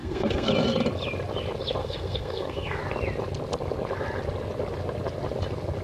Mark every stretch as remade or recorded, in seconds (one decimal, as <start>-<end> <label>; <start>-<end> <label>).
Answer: 0.0-0.5 remade; 0.5-1.8 recorded; 1.8-2.8 remade; 2.8-5.8 recorded